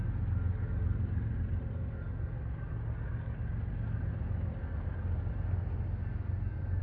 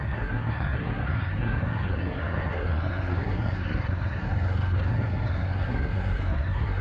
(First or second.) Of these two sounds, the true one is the first